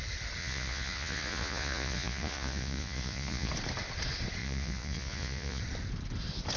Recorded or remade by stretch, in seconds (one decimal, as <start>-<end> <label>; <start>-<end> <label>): 0.0-0.4 recorded; 0.4-3.5 remade; 3.5-4.4 recorded; 4.4-5.6 remade; 5.6-6.6 recorded